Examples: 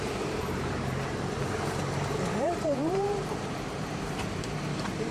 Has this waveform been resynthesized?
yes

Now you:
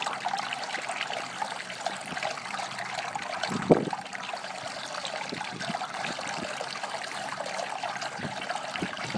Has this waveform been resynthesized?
yes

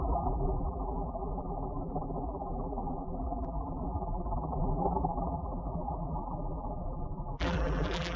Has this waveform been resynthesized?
yes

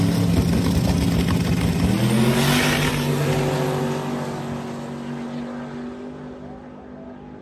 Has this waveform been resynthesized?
no